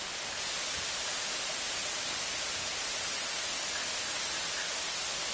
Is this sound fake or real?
real